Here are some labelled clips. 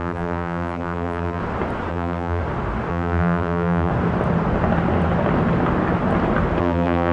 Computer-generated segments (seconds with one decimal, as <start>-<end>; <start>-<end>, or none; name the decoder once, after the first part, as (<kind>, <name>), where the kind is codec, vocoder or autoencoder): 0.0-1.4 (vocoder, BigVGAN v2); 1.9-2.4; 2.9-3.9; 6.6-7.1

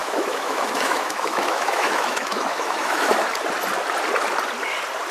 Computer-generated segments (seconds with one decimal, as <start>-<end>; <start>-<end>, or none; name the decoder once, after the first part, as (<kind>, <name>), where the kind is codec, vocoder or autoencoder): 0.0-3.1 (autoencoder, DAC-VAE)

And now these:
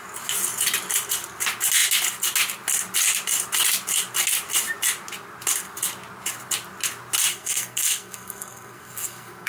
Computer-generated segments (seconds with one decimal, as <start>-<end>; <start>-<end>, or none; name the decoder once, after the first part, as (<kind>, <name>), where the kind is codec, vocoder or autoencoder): 7.3-9.5 (codec, SNAC)

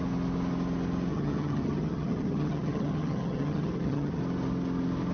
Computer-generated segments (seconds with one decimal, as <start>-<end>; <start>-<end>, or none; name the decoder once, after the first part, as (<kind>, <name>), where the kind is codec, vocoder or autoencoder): 1.1-4.2 (vocoder, HiFi-GAN)

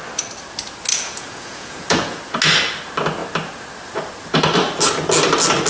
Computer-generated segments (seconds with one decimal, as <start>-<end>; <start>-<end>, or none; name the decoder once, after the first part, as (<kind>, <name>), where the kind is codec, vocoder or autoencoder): 0.9-2.2 (vocoder, Vocos)

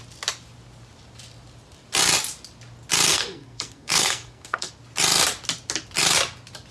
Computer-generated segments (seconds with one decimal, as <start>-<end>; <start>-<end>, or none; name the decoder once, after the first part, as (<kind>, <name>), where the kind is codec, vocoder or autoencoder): 3.1-4.7 (codec, SNAC)